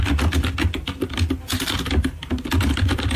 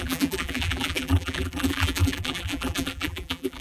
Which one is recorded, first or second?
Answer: first